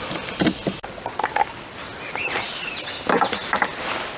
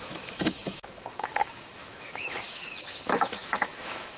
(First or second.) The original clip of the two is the first